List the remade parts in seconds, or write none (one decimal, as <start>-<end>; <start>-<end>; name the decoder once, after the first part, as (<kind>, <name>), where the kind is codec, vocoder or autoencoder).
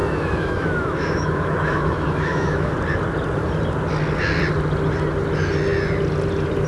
0.0-2.7 (autoencoder, DAC-VAE)